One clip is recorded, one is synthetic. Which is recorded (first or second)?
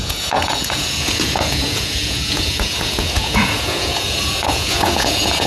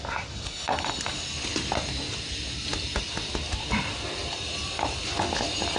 second